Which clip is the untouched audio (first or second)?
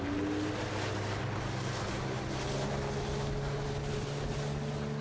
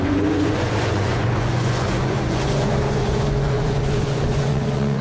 first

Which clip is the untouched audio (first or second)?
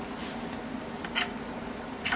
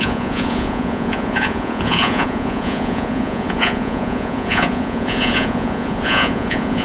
first